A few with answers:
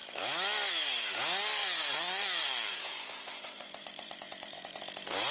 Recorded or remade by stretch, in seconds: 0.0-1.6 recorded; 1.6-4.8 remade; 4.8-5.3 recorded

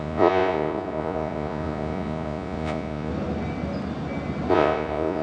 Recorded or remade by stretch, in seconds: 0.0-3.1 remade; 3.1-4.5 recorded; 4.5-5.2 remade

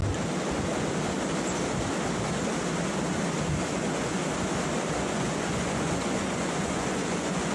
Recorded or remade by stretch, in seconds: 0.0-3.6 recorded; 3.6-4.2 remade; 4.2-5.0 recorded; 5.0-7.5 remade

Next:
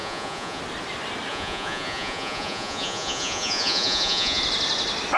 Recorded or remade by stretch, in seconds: 0.0-0.6 remade; 0.6-1.3 recorded; 1.3-4.4 remade; 4.4-5.2 recorded

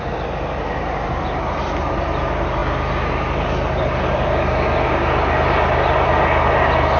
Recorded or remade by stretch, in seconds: 0.0-7.0 recorded

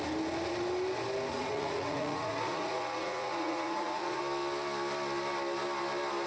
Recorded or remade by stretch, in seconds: 0.0-1.3 recorded; 1.3-4.2 remade; 4.2-6.3 recorded

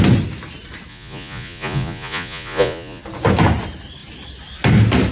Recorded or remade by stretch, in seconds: 0.0-0.9 recorded; 0.9-3.0 remade; 3.0-5.1 recorded

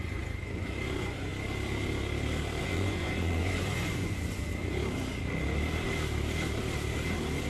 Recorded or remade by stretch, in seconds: 0.0-1.3 remade; 1.3-2.6 recorded; 2.6-4.5 remade; 4.5-7.5 recorded